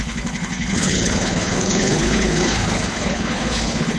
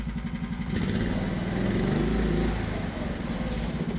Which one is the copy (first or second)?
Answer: first